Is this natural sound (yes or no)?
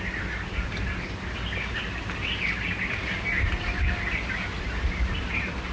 yes